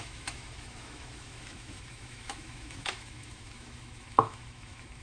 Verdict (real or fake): fake